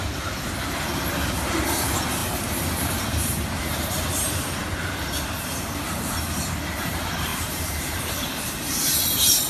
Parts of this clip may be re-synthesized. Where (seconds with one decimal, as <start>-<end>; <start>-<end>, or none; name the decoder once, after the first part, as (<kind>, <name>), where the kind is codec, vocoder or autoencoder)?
0.0-0.9 (vocoder, BigVGAN v2); 1.5-9.5